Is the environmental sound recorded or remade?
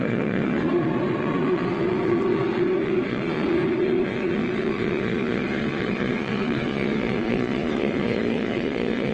remade